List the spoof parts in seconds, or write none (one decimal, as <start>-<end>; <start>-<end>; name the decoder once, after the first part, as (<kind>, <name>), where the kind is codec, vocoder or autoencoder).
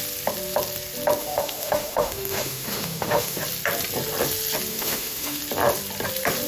1.2-3.4 (autoencoder, DAC-VAE); 4.7-5.4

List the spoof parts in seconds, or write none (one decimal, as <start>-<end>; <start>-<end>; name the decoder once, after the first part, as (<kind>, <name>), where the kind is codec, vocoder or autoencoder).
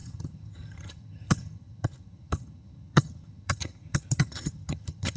0.0-5.2 (vocoder, HiFi-GAN)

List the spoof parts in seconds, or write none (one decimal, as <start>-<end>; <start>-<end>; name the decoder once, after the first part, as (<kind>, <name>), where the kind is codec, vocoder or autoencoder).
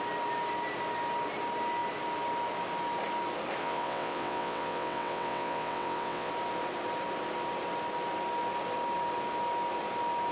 3.6-6.3 (vocoder, WaveNeXt)